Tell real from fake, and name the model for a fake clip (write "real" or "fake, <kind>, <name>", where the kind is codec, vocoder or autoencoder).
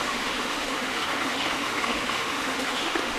fake, autoencoder, DAC-VAE